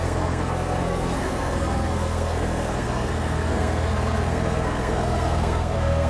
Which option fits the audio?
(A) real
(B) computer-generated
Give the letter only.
B